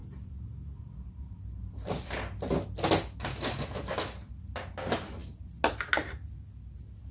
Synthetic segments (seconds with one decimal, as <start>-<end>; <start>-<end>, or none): none